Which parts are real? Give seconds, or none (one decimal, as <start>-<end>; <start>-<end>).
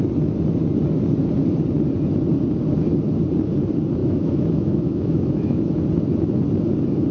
0.0-4.0; 5.6-7.1